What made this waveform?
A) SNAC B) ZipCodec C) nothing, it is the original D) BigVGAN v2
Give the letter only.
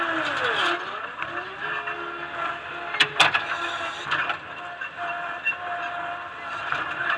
C